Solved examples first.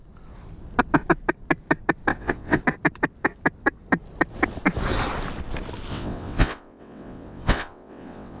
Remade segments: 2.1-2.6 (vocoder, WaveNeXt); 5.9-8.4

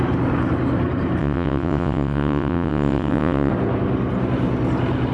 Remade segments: 1.2-3.5 (vocoder, WaveNeXt)

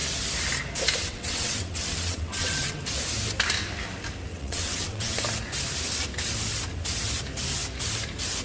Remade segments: 1.0-2.8 (vocoder, WaveNeXt); 4.3-5.2

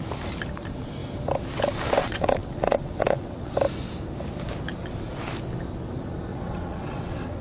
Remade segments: 2.0-3.5 (vocoder, WaveNeXt); 6.3-7.4

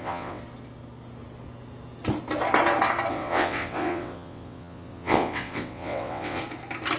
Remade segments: 0.0-0.4 (vocoder, WaveNeXt); 3.1-6.4